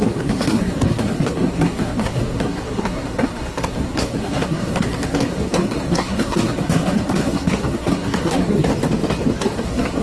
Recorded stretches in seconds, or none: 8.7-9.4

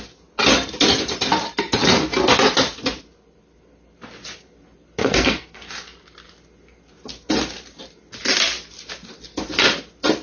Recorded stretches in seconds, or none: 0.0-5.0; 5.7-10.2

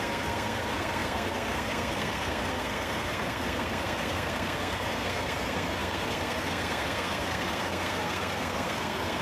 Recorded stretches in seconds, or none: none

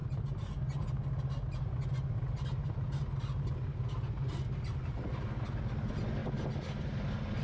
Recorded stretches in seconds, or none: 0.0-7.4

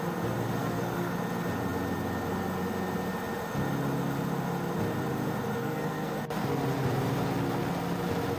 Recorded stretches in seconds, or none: 0.0-0.6; 1.1-5.6; 6.2-8.4

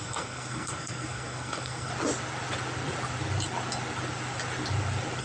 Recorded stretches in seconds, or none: 1.9-5.2

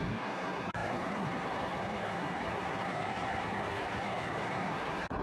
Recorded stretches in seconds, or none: none

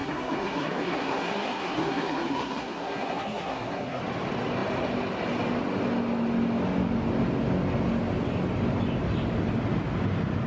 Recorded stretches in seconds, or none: 4.0-10.5